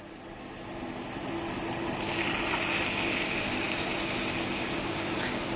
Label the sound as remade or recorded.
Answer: recorded